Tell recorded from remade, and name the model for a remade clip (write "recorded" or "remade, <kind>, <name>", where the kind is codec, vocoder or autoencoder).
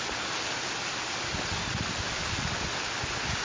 recorded